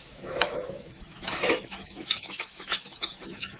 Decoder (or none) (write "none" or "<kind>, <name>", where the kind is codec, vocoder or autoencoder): autoencoder, DAC-VAE